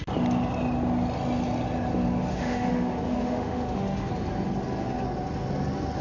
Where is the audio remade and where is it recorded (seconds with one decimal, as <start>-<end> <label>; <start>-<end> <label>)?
0.0-2.3 recorded; 2.3-4.1 remade; 4.1-6.0 recorded